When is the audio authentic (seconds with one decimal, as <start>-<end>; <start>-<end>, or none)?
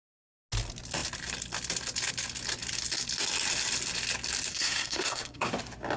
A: 0.0-4.5; 5.5-6.0